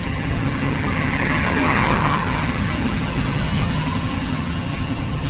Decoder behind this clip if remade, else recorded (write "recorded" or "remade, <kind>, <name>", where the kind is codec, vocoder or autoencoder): remade, vocoder, HiFi-GAN